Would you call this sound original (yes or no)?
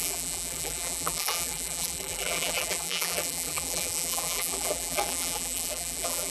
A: no